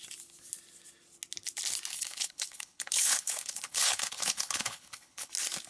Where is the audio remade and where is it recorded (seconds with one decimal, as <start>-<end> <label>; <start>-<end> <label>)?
0.0-1.9 recorded; 1.9-5.3 remade; 5.3-5.7 recorded